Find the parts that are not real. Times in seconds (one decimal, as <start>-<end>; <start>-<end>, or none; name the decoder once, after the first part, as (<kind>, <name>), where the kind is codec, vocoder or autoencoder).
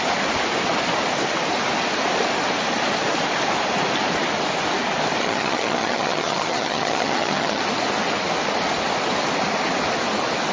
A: 5.2-7.6 (vocoder, HiFi-GAN)